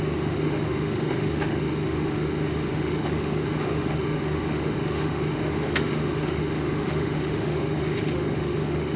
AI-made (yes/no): yes